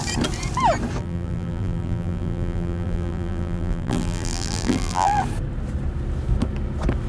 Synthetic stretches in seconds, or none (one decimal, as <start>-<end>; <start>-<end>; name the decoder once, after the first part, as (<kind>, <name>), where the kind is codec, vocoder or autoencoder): 1.0-5.2 (vocoder, BigVGAN v2)